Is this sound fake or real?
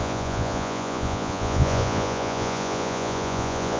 fake